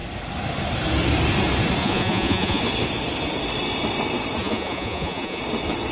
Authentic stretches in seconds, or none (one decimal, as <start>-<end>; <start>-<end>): 0.0-1.8; 2.6-4.4; 5.4-5.9

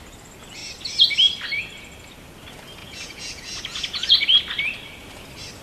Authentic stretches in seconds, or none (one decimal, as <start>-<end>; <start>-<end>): 0.0-2.8; 4.4-5.6

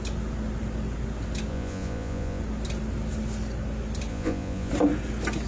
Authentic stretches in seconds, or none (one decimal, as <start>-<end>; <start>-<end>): 0.0-1.5; 2.4-4.1; 4.7-5.5

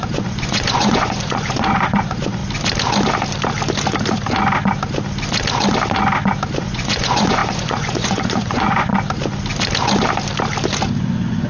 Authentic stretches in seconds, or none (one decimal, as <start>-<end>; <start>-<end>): 2.4-6.6; 8.9-11.0

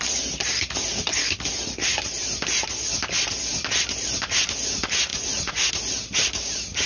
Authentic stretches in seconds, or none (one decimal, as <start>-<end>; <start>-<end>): 0.0-5.1; 5.7-6.9